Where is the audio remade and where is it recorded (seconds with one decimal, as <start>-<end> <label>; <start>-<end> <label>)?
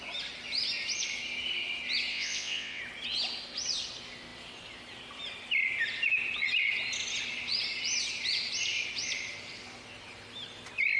0.0-2.1 recorded; 2.1-2.8 remade; 2.8-11.0 recorded